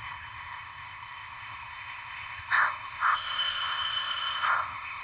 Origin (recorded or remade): remade